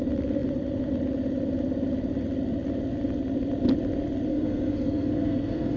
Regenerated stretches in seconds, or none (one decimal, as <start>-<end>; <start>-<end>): 4.3-5.8